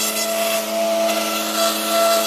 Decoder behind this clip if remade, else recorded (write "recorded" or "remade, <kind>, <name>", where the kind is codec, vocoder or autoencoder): recorded